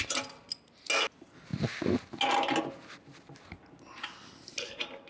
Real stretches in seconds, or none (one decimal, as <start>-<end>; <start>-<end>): 0.0-5.1